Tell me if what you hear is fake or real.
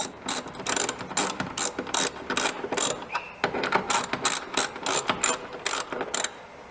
real